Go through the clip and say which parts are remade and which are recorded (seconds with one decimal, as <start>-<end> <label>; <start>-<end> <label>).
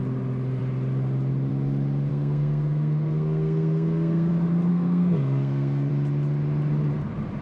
0.0-2.1 recorded; 2.1-4.3 remade; 4.3-4.7 recorded; 4.7-5.9 remade; 5.9-7.4 recorded